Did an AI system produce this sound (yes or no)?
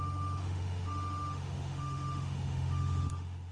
yes